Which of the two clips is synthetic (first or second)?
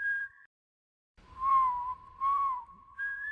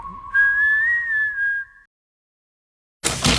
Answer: first